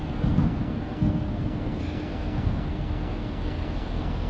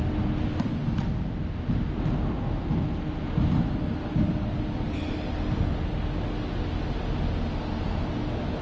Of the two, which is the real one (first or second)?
second